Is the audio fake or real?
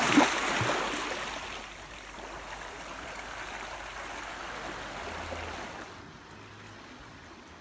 real